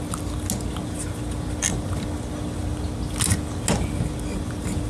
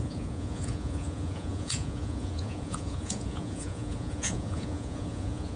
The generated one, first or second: second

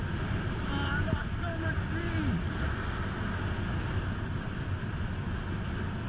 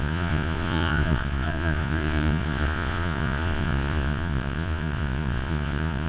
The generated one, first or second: second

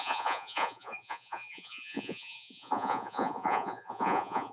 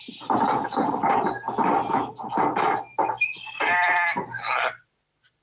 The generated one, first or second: first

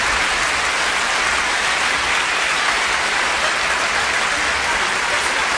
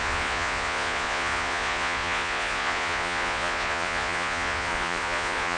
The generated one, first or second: second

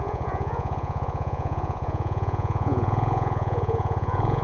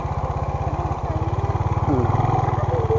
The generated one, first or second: first